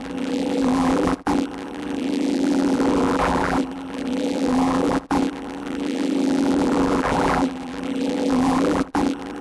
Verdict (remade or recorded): remade